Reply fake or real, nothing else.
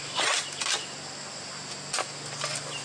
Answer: real